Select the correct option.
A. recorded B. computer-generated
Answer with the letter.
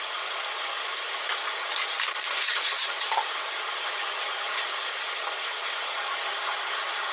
B